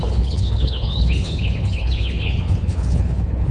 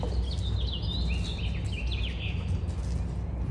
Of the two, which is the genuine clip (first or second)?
second